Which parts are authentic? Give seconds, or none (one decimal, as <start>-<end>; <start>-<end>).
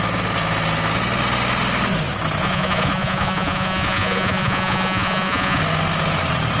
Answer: 0.0-2.4; 5.6-6.6